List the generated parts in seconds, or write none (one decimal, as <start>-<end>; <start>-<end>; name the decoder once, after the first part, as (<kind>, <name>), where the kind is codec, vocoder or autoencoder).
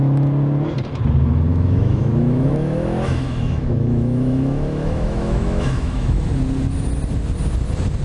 1.5-6.3 (autoencoder, DAC-VAE)